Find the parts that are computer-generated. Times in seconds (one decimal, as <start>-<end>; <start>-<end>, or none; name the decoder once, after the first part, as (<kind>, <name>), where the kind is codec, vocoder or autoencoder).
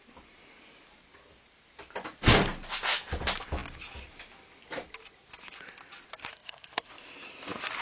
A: 6.3-6.9 (codec, SNAC)